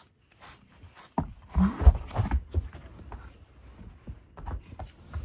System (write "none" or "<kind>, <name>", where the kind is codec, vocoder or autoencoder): none